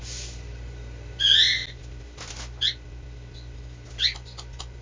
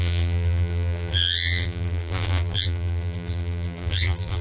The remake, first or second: second